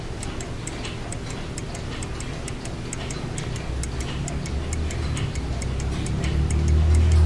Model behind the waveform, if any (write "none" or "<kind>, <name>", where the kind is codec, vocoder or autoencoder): none